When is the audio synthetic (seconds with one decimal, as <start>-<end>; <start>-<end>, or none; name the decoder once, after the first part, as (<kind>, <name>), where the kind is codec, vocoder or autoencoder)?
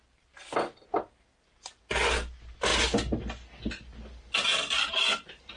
none